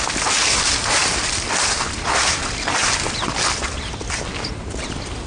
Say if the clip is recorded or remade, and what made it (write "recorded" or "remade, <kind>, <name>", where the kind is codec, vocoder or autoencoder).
recorded